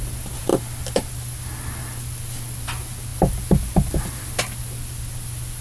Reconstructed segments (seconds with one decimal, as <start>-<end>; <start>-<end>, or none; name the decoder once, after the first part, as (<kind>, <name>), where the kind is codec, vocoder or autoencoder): none